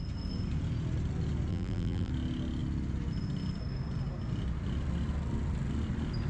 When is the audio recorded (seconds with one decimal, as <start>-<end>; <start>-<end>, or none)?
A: 0.0-1.5; 2.1-6.3